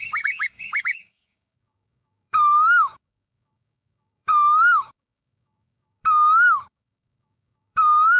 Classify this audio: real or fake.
fake